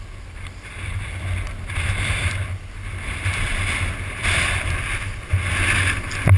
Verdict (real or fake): real